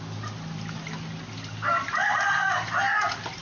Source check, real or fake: real